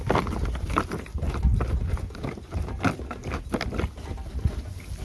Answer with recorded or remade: recorded